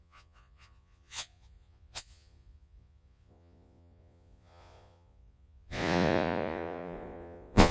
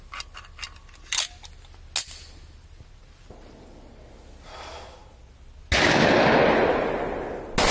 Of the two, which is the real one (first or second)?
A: second